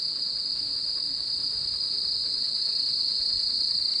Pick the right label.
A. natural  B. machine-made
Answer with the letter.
A